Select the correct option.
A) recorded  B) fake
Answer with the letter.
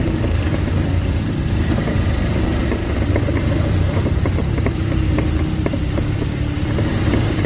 B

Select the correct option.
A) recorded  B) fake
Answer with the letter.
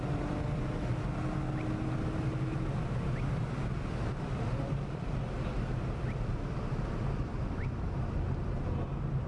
A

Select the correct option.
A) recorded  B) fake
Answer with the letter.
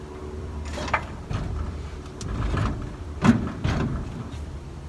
B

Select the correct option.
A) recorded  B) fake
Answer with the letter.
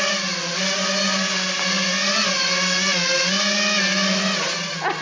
A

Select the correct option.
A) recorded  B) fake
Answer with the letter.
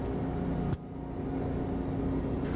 A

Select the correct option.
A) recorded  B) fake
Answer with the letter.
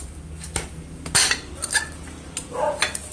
A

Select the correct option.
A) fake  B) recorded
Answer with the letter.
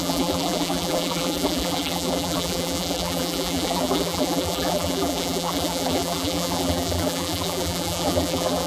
A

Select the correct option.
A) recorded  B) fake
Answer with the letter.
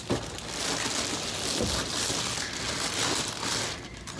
A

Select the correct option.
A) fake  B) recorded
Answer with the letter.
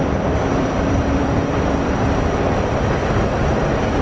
A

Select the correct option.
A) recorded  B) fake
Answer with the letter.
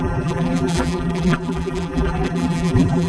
B